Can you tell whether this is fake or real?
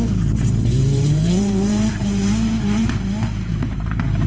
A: fake